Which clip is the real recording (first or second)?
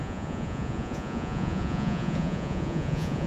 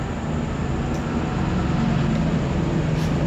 second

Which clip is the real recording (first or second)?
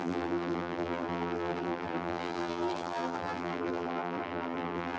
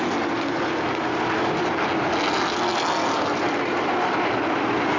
second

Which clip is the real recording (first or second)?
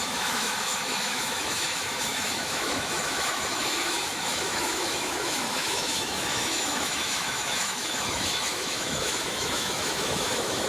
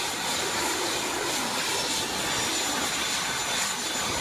second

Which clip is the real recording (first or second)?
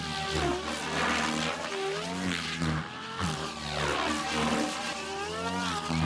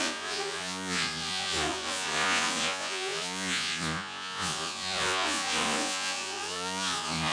first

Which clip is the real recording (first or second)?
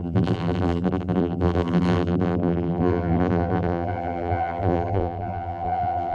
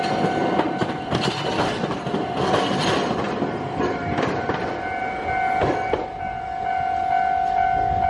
second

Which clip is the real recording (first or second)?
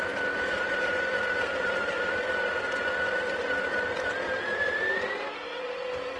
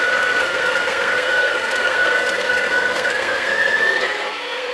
first